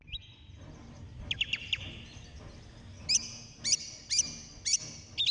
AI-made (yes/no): no